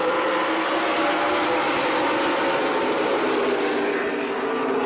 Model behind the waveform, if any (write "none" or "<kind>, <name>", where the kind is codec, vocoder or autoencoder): none